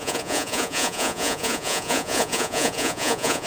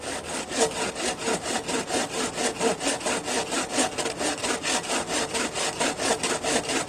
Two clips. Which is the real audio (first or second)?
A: second